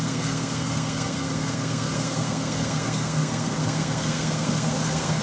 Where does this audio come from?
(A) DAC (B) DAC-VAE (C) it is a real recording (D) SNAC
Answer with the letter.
D